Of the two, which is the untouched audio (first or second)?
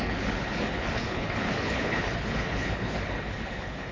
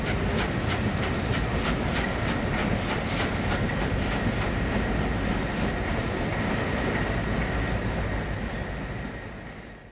second